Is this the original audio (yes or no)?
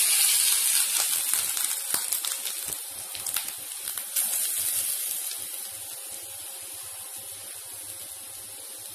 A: yes